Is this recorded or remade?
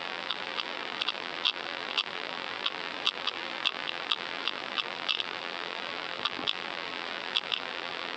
remade